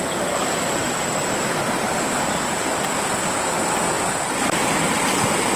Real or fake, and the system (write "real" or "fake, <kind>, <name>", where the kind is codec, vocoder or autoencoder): real